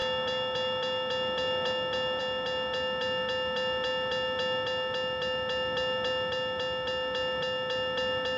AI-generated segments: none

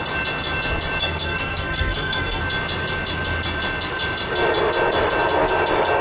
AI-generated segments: 1.0-2.4

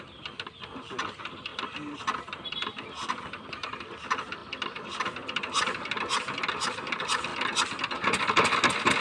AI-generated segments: 0.0-4.4; 5.4-7.3

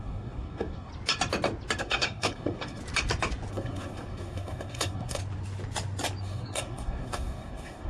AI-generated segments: 0.0-0.9; 1.8-2.8; 3.5-5.2; 6.2-7.9